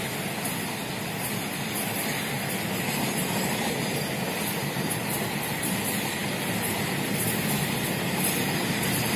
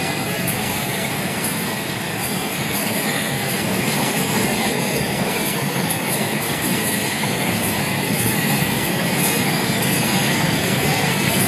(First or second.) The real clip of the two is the first